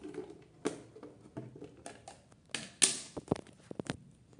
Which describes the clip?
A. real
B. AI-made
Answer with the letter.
A